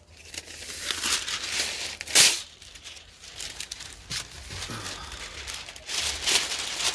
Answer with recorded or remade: recorded